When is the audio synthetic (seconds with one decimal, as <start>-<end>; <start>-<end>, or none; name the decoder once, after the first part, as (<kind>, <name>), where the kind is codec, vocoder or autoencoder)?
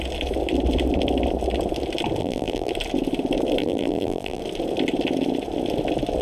2.2-2.7 (vocoder, BigVGAN v2); 3.6-4.4